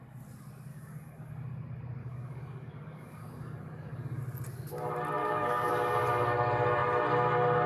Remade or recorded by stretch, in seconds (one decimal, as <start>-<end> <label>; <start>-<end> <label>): 0.0-0.7 recorded; 0.7-1.3 remade; 1.3-2.0 recorded; 2.0-4.2 remade; 4.2-5.2 recorded; 5.2-5.7 remade; 5.7-7.7 recorded